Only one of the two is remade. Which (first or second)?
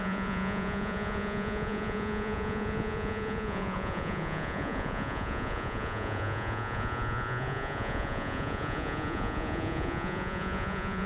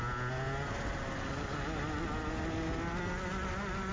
first